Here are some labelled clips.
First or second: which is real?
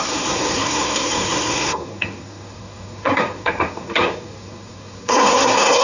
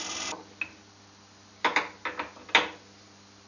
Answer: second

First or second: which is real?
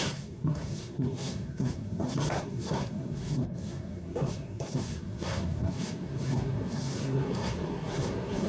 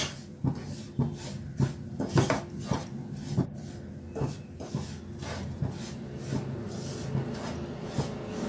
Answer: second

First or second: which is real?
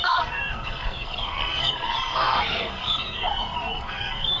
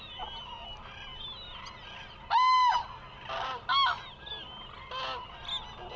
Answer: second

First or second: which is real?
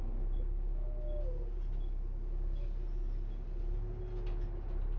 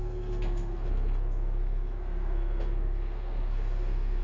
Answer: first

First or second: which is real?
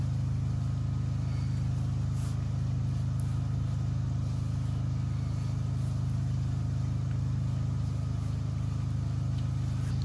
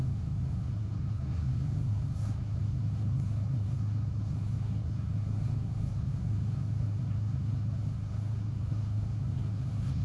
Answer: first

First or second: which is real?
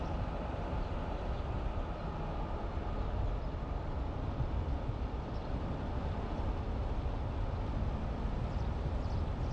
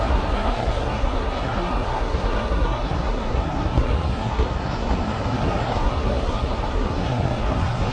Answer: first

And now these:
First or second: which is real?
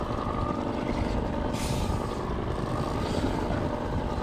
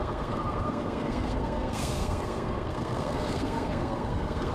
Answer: first